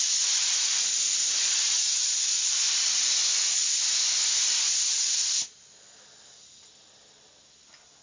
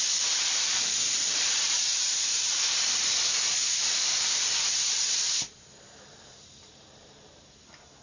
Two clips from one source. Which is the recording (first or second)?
first